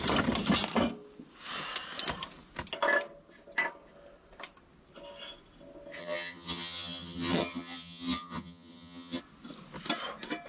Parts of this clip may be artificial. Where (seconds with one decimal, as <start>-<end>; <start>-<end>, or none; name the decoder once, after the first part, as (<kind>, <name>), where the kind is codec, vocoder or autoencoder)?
6.0-9.2 (vocoder, HiFi-GAN)